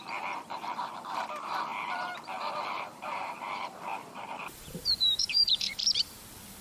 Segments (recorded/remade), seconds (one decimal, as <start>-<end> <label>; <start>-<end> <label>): 0.0-6.6 remade